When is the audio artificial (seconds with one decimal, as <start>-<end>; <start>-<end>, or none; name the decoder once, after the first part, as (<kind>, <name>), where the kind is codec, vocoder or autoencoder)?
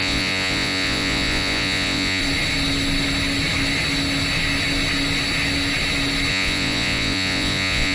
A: 0.0-2.2 (vocoder, Vocos); 6.3-7.9